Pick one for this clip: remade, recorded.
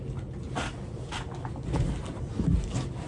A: recorded